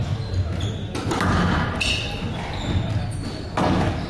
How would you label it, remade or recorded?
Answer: recorded